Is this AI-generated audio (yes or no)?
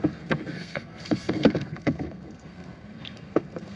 yes